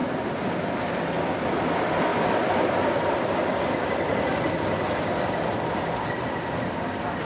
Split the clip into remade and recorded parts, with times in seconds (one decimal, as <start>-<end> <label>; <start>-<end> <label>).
0.0-7.3 recorded

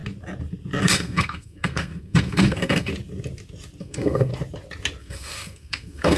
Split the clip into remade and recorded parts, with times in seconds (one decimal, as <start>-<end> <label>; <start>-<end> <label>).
0.0-0.8 recorded; 0.8-2.9 remade; 2.9-3.8 recorded; 3.8-4.3 remade; 4.3-5.0 recorded; 5.0-6.2 remade

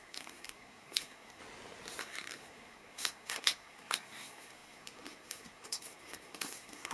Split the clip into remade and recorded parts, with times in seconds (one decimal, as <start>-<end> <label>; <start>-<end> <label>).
0.0-1.4 remade; 1.4-2.0 recorded; 2.0-6.9 remade